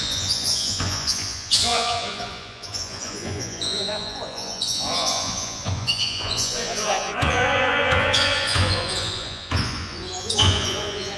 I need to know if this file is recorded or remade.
remade